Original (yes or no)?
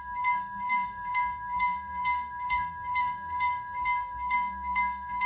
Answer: no